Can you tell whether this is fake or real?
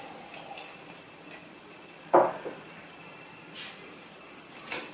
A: real